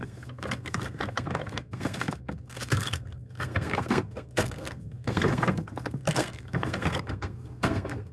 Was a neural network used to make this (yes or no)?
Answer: yes